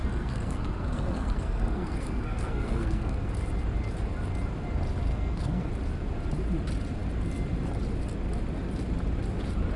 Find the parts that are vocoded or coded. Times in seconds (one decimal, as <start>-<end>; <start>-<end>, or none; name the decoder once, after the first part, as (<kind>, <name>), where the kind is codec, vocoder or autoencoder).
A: 0.0-3.3 (codec, SNAC); 5.1-5.7